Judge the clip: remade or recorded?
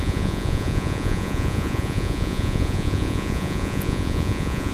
remade